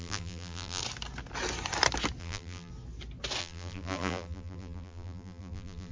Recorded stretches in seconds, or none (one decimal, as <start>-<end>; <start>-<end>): 0.8-2.2; 2.7-3.4